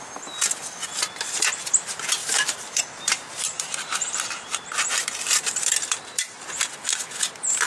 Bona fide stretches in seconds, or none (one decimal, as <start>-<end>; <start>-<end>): 0.0-2.2; 6.4-7.7